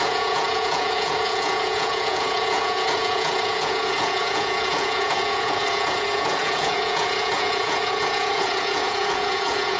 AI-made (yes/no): yes